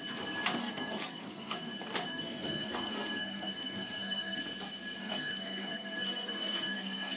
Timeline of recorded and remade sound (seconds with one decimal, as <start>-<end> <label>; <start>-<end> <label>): 0.0-0.6 recorded; 0.6-1.7 remade; 1.7-2.1 recorded; 2.1-4.4 remade; 4.4-5.0 recorded; 5.0-7.2 remade